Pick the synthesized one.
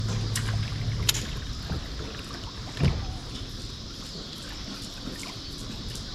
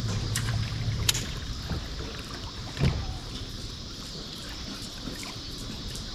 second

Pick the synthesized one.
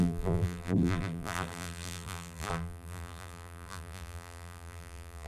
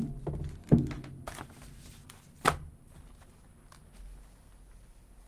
first